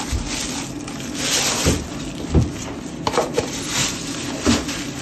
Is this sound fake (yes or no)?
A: no